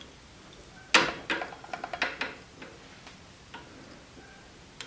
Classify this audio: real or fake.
real